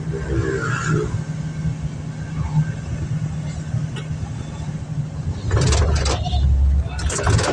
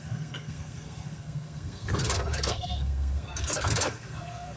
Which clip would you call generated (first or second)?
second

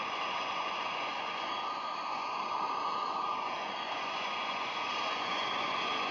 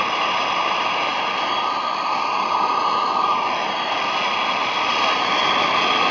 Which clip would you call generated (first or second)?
first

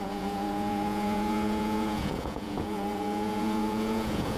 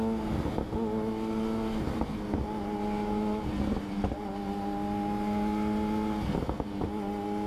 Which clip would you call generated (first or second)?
first